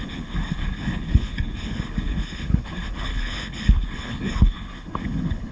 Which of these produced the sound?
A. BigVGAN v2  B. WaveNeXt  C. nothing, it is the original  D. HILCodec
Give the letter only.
D